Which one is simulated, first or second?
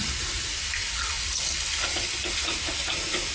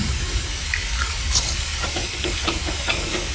second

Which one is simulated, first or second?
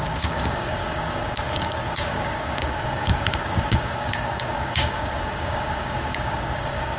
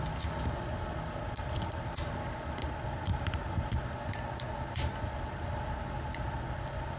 first